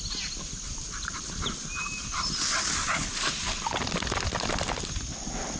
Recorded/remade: recorded